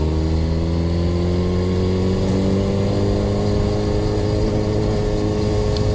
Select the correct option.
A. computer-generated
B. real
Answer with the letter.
B